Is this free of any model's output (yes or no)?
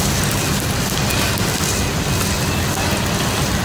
yes